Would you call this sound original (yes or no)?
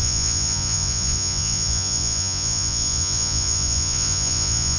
no